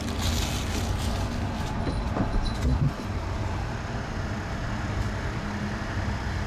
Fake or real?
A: real